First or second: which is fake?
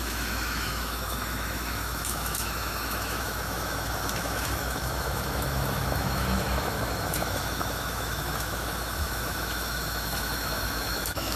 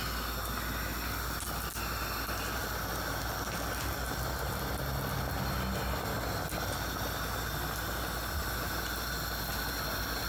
first